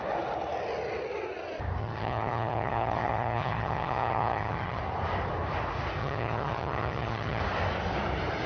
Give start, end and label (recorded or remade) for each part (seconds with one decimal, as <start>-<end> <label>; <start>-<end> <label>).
0.0-1.8 recorded; 1.8-4.8 remade; 4.8-6.0 recorded; 6.0-7.4 remade; 7.4-8.5 recorded